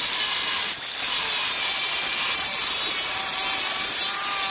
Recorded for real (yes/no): yes